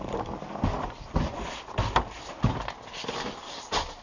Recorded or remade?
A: recorded